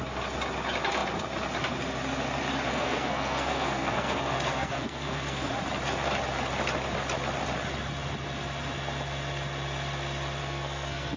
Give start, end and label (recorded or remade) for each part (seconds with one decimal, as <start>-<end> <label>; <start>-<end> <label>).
0.0-2.7 recorded; 2.7-5.5 remade; 5.5-10.4 recorded; 10.4-11.2 remade